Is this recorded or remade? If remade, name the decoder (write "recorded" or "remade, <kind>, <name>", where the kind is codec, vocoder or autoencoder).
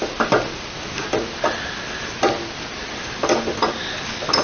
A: recorded